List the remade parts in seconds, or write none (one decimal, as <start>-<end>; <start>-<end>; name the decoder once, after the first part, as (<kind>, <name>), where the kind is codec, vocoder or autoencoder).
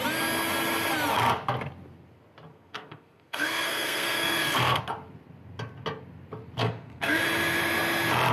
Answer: 2.5-4.8 (codec, SNAC); 6.6-7.2